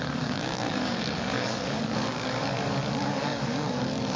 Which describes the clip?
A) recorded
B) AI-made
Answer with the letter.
B